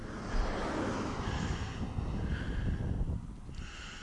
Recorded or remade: recorded